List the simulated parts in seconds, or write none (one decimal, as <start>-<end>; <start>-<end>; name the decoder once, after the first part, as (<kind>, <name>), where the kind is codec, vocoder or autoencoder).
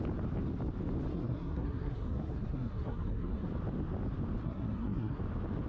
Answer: 1.1-3.5 (codec, SNAC); 4.4-5.2